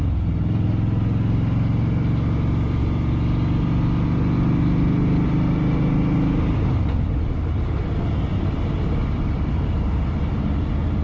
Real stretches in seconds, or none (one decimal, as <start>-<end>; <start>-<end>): 0.0-11.0